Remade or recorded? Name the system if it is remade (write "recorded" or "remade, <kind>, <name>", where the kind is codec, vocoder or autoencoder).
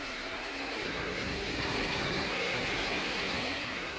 remade, codec, SNAC